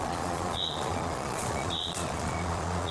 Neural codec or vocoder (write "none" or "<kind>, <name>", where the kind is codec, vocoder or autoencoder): vocoder, Vocos